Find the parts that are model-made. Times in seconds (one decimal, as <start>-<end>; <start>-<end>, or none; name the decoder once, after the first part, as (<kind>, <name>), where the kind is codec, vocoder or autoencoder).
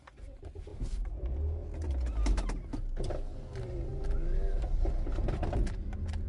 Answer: none